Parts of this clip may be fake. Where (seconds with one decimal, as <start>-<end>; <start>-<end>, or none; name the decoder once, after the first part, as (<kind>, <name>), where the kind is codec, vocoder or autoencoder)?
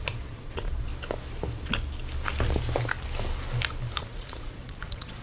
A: 0.0-0.9 (vocoder, Vocos); 4.0-5.2